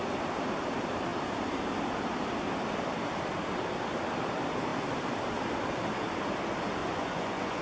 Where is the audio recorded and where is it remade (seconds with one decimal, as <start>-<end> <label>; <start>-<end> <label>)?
0.0-6.8 recorded; 6.8-7.6 remade